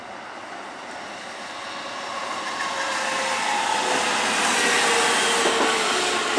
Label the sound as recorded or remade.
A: recorded